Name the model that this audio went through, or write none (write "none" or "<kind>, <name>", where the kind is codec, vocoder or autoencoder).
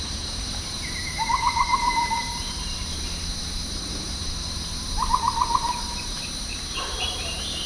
vocoder, BigVGAN v2